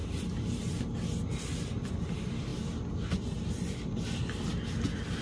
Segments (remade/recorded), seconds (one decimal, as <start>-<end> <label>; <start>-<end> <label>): 0.0-0.7 remade; 0.7-2.5 recorded; 2.5-4.0 remade; 4.0-4.5 recorded; 4.5-5.2 remade